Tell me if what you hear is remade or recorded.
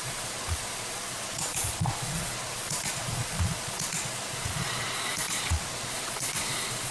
remade